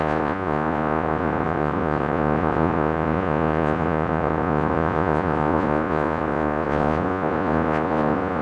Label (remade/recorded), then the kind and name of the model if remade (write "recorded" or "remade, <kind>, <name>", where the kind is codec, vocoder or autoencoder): remade, vocoder, Vocos